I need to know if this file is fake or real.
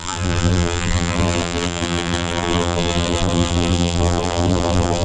fake